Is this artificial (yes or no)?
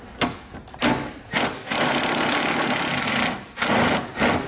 no